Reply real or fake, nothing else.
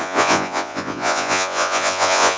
fake